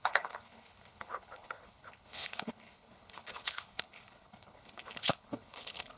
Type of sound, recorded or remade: remade